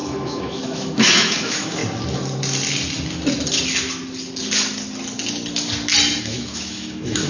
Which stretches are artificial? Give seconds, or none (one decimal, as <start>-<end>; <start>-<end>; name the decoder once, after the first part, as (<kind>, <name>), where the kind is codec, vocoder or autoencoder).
0.0-1.8 (autoencoder, DAC-VAE); 6.2-7.3